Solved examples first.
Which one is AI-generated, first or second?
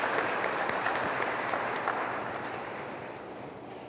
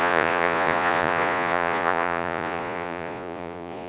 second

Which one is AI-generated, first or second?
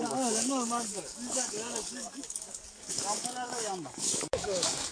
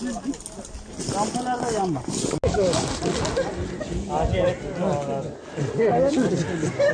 first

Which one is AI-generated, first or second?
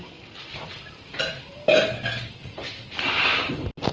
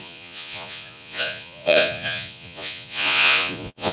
second